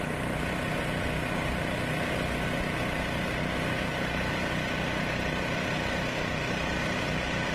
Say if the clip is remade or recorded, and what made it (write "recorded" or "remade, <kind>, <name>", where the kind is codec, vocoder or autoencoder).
recorded